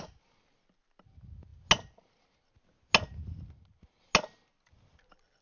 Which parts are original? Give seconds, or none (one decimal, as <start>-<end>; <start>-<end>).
0.0-5.4